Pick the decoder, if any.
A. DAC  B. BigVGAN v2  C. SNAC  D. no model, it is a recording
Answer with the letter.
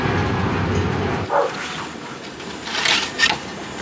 D